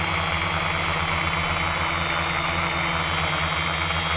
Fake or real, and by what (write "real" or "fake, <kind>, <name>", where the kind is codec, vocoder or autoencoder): real